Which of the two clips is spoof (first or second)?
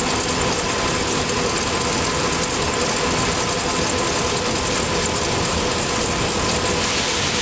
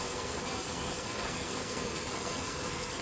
second